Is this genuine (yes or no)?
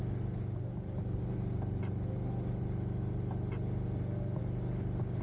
yes